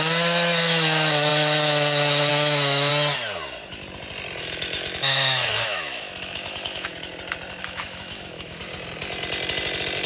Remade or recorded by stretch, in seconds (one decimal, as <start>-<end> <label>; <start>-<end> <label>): 0.0-2.9 remade; 2.9-4.4 recorded; 4.4-6.9 remade; 6.9-7.6 recorded; 7.6-8.6 remade; 8.6-10.1 recorded